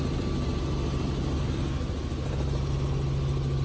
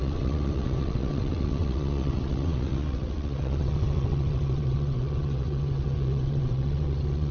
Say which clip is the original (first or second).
first